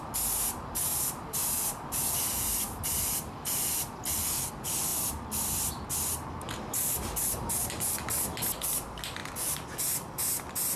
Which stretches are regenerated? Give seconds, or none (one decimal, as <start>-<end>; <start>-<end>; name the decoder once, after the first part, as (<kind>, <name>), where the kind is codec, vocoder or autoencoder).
0.9-4.5 (vocoder, BigVGAN v2)